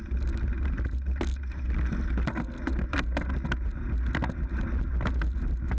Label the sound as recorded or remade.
recorded